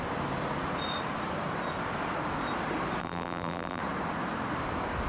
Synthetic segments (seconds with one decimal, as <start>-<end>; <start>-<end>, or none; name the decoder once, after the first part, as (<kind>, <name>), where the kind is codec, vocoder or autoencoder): 3.0-3.8 (vocoder, BigVGAN v2)